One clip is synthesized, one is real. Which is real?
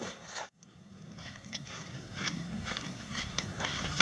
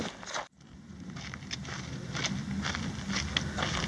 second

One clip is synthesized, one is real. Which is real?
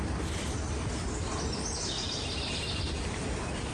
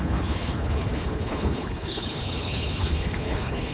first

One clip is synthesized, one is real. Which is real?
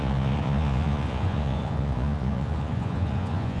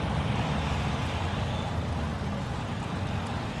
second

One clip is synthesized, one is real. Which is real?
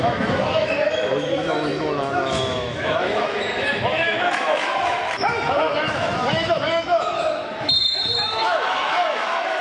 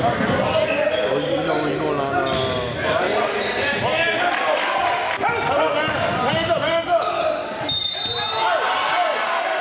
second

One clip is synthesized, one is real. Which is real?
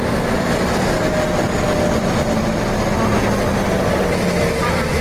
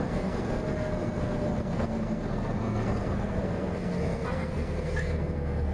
first